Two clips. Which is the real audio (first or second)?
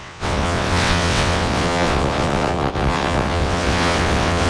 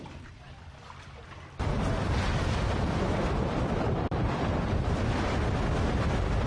second